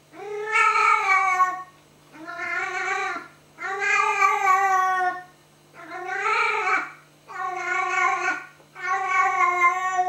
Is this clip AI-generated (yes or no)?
no